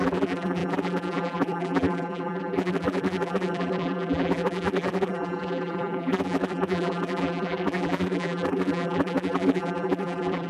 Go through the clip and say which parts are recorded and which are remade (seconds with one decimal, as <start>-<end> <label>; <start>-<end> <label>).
0.0-10.5 remade